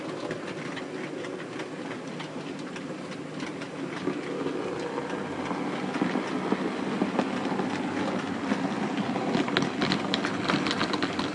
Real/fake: real